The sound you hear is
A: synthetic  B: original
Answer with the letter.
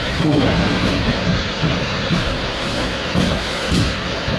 A